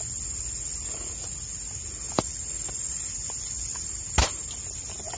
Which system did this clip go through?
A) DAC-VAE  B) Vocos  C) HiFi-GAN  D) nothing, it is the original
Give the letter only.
D